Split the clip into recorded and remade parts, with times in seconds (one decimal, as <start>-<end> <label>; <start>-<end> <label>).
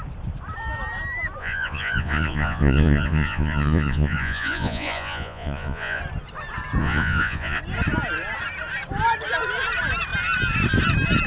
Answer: 0.0-1.4 recorded; 1.4-6.0 remade; 6.0-6.8 recorded; 6.8-7.6 remade; 7.6-11.3 recorded